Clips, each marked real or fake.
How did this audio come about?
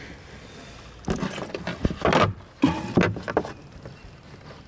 real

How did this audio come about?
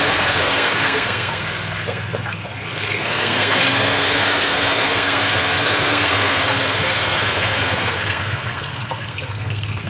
fake